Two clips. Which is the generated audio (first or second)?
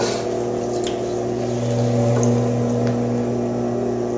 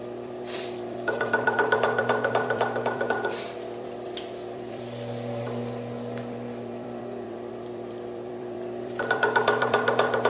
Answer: second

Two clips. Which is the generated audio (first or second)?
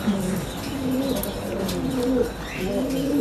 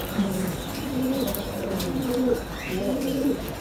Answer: second